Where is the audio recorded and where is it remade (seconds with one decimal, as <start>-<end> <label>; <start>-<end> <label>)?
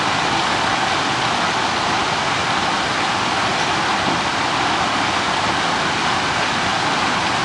0.0-7.4 recorded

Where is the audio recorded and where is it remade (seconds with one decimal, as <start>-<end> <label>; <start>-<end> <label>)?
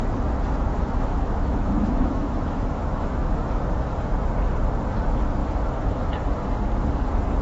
0.0-0.7 recorded; 0.7-3.9 remade; 3.9-7.4 recorded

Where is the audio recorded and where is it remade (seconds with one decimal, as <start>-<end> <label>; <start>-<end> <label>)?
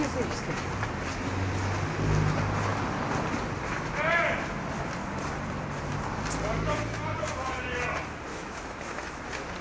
0.0-8.3 recorded; 8.3-9.2 remade; 9.2-9.6 recorded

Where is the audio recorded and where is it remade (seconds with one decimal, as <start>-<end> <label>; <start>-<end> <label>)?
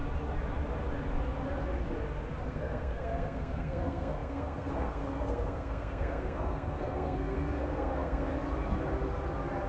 0.0-2.5 recorded; 2.5-8.3 remade; 8.3-9.7 recorded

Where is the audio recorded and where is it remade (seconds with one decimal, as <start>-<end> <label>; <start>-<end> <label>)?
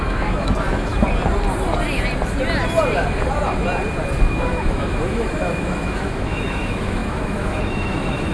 0.0-0.9 remade; 0.9-4.3 recorded; 4.3-8.3 remade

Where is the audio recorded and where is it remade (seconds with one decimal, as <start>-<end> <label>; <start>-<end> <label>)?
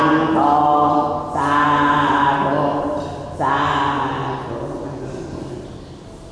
0.0-6.3 recorded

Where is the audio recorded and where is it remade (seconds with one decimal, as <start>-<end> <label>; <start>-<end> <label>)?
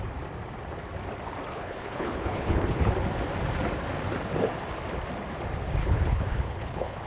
0.0-1.5 recorded; 1.5-2.9 remade; 2.9-5.8 recorded; 5.8-7.1 remade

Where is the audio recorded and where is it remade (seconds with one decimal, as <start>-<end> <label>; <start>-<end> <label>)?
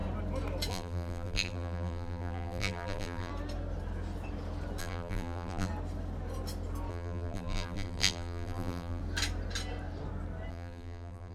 0.0-0.7 recorded; 0.7-3.3 remade; 3.3-4.8 recorded; 4.8-5.7 remade; 5.7-6.9 recorded; 6.9-9.0 remade; 9.0-10.5 recorded; 10.5-11.3 remade